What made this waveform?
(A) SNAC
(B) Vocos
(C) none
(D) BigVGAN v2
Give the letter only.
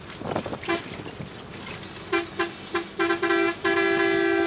C